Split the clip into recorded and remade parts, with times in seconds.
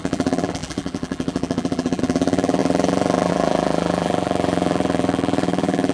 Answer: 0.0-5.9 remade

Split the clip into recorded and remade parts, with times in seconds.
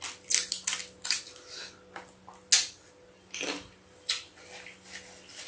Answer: 0.0-5.5 recorded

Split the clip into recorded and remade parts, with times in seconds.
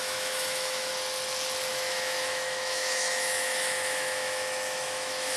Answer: 0.0-0.9 remade; 0.9-1.7 recorded; 1.7-5.4 remade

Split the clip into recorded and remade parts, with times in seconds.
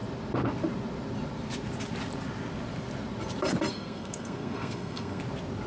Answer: 0.0-3.7 recorded; 3.7-5.2 remade; 5.2-5.7 recorded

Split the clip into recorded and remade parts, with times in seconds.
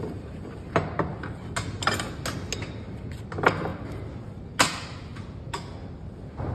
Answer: 0.0-6.5 recorded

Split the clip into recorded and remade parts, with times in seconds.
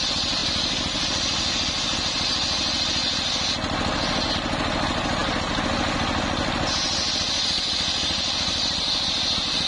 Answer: 0.0-9.7 recorded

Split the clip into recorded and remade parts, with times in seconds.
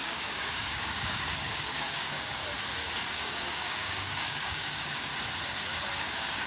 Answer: 0.0-2.4 remade; 2.4-3.1 recorded; 3.1-5.1 remade; 5.1-6.0 recorded; 6.0-6.5 remade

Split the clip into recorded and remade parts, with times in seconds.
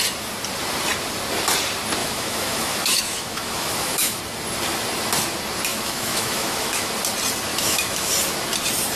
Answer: 0.0-2.0 recorded; 2.0-4.2 remade; 4.2-5.7 recorded; 5.7-6.9 remade; 6.9-7.5 recorded; 7.5-8.1 remade; 8.1-9.0 recorded